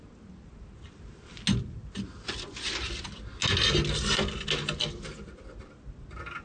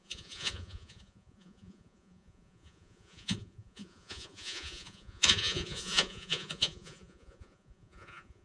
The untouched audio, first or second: first